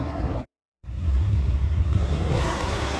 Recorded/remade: remade